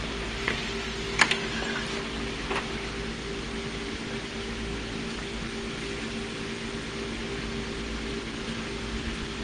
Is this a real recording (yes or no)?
yes